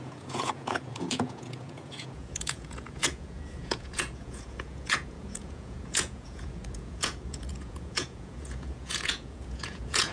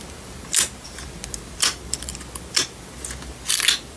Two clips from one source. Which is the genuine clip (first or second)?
second